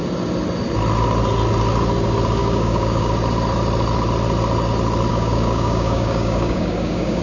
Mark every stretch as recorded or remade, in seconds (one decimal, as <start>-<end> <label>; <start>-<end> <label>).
0.0-2.4 recorded; 2.4-3.1 remade; 3.1-5.1 recorded; 5.1-7.2 remade